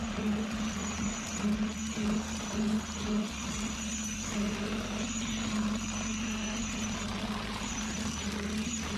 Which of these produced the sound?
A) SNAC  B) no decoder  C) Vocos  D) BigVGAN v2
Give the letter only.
B